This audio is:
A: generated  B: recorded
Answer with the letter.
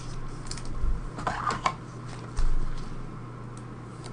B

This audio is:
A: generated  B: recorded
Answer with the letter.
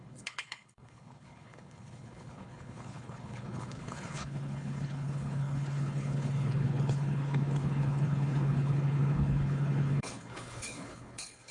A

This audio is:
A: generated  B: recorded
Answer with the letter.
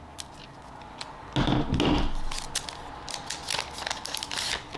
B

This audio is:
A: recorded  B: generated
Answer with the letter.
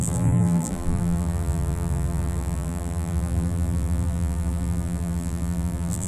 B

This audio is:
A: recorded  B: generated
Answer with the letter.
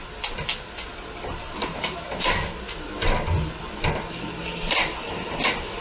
A